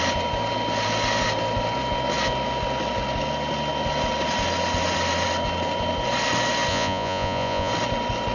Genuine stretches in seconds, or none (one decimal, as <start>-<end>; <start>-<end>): 0.0-6.7; 7.7-8.3